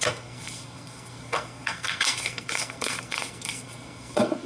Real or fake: fake